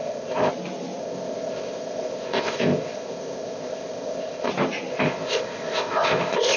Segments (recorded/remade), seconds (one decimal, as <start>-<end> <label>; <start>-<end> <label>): 0.0-0.5 remade; 0.5-1.0 recorded; 1.0-4.5 remade; 4.5-4.9 recorded; 4.9-6.6 remade